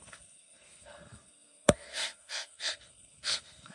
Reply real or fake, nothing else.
fake